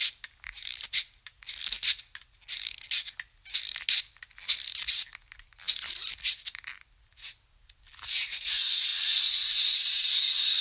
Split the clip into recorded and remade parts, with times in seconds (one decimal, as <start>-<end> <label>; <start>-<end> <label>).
0.0-10.6 recorded